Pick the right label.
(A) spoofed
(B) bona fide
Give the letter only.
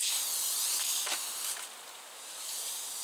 B